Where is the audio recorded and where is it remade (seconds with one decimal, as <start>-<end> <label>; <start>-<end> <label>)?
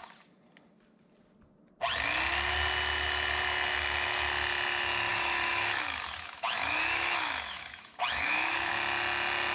0.0-5.1 recorded; 5.1-8.7 remade; 8.7-9.5 recorded